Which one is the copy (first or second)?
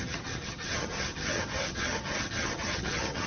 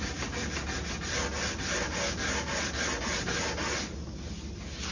first